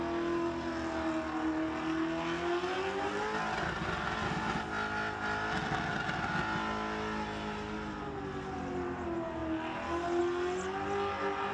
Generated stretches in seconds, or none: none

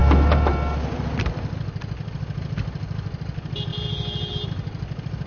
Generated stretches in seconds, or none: none

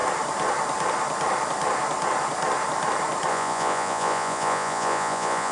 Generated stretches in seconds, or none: 3.3-5.5 (vocoder, Vocos)

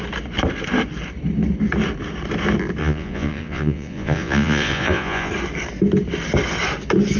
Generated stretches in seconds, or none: 2.8-5.3 (vocoder, Vocos)

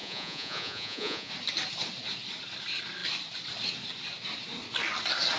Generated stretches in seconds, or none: 0.0-1.3 (vocoder, Vocos)

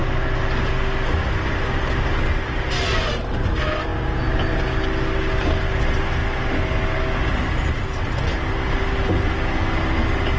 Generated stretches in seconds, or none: none

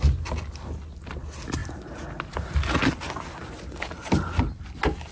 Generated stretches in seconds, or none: none